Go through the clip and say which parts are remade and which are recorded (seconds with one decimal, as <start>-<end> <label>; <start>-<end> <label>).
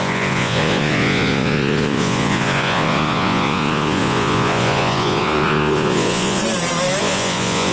0.0-6.4 remade; 6.4-7.0 recorded; 7.0-7.7 remade